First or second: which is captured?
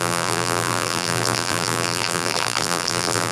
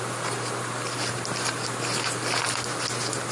second